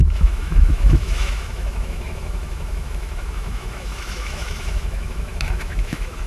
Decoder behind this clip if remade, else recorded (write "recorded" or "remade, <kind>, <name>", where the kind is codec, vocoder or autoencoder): remade, autoencoder, DAC-VAE